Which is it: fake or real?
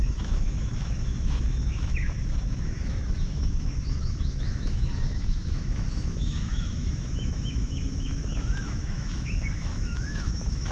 fake